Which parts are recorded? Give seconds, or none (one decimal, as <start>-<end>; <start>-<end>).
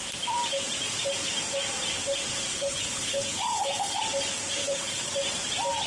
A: 0.0-2.5; 4.0-4.6; 5.1-5.9